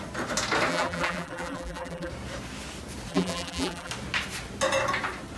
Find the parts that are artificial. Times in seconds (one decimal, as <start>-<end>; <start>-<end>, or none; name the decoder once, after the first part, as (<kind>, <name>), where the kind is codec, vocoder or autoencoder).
0.7-2.1 (vocoder, BigVGAN v2); 3.1-3.9